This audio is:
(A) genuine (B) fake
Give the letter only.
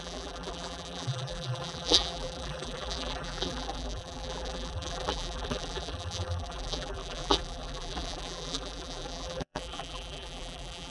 B